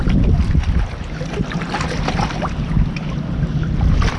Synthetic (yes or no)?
no